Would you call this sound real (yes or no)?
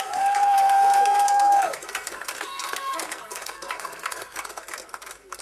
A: no